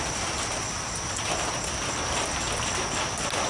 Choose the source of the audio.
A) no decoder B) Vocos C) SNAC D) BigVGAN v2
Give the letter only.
A